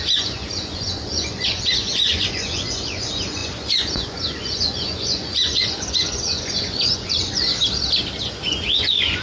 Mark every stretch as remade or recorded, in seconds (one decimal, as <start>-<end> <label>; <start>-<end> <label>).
0.0-7.5 remade; 7.5-8.2 recorded; 8.2-9.2 remade